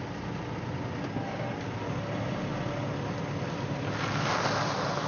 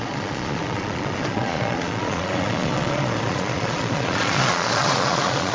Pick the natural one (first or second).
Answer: first